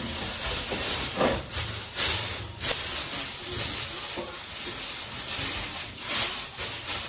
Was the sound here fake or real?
real